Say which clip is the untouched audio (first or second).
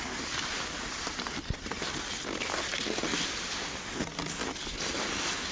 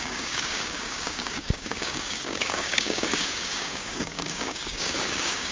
first